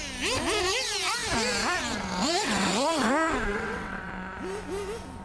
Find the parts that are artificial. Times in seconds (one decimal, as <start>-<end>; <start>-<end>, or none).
2.4-3.1; 3.5-4.1

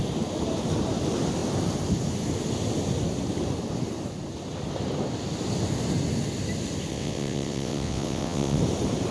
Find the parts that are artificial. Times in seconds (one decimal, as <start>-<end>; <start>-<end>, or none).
6.9-8.6

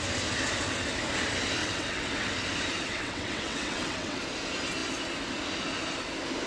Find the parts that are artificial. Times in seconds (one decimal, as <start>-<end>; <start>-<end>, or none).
1.6-2.3; 2.9-4.2

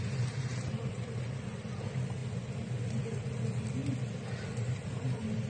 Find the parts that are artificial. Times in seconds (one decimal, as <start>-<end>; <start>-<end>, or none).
none

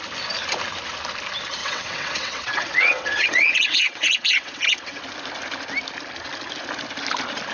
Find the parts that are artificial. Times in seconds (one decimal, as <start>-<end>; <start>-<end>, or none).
1.6-5.0

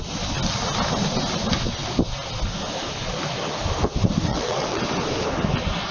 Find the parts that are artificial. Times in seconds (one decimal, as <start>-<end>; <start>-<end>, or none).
4.3-4.8